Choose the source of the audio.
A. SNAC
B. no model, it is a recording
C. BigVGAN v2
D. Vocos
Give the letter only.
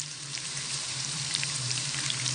C